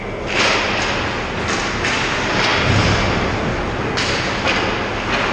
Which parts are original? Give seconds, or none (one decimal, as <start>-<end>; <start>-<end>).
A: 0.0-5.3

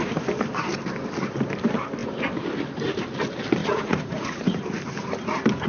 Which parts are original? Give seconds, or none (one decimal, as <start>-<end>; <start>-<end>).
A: 0.0-3.6; 4.6-5.7

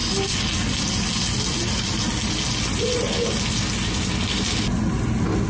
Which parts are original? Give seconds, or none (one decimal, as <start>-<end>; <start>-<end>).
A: 0.0-5.5

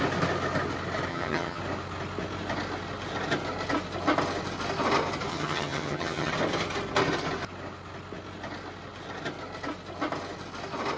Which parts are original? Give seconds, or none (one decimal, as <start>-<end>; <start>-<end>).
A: 0.0-1.1; 1.6-5.3; 6.3-11.0

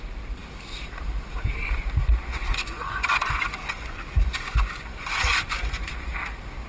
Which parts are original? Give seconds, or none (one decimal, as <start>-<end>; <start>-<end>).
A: 0.0-2.2; 6.1-6.7

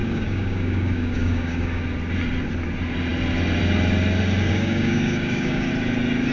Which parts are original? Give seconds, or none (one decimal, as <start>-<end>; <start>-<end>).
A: 1.8-4.5; 5.7-6.3

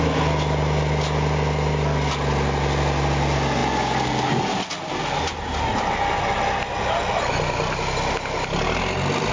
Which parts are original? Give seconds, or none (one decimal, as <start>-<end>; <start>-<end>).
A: 0.0-9.3

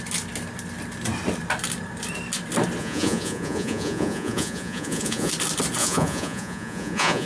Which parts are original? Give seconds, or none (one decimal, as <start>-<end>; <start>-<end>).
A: 0.0-2.8; 5.3-5.8